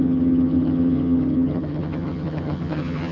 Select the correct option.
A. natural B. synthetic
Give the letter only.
B